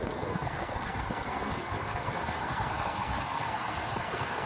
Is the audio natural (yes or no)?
no